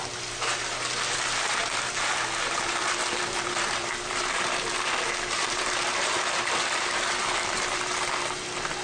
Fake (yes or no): yes